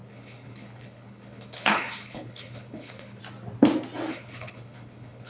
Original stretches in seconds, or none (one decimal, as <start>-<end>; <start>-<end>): 3.2-4.1